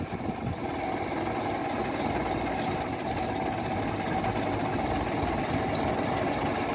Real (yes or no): yes